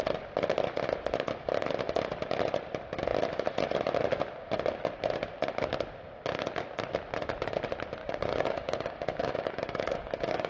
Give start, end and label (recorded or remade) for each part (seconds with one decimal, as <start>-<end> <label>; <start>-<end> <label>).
0.0-8.0 recorded; 8.0-10.5 remade